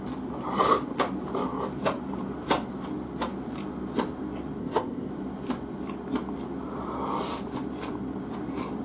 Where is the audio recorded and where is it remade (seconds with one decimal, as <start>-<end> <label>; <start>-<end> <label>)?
0.0-4.6 recorded; 4.6-5.1 remade; 5.1-8.8 recorded